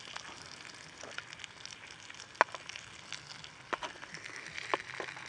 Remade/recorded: recorded